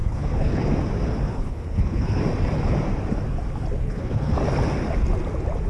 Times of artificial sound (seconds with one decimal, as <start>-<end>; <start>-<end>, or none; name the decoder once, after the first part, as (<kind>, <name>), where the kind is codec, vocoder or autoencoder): 0.0-0.6 (codec, HILCodec); 1.3-2.2; 3.8-4.3